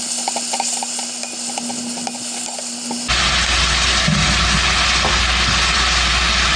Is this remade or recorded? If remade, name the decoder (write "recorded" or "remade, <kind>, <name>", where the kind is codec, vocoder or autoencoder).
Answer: recorded